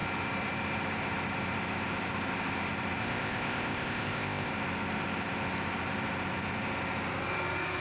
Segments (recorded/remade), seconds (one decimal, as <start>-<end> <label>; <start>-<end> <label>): 0.0-3.0 recorded; 3.0-4.5 remade; 4.5-7.8 recorded